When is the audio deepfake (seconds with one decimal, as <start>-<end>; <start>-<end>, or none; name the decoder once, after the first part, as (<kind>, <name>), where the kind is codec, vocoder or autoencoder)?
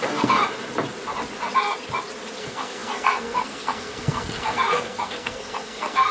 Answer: 0.0-0.4 (codec, SNAC); 2.4-6.1